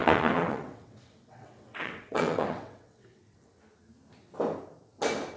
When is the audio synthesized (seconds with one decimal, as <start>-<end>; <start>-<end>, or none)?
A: 0.0-3.2